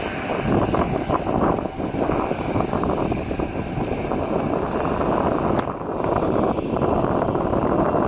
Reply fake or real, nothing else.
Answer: real